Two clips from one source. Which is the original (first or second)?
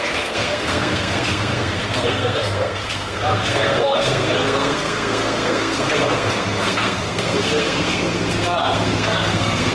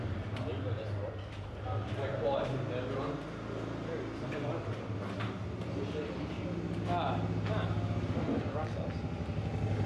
second